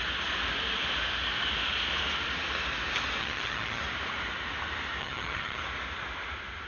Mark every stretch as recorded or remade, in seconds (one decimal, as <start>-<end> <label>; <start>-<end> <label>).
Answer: 0.0-3.2 recorded; 3.2-3.8 remade; 3.8-5.0 recorded; 5.0-5.6 remade; 5.6-6.7 recorded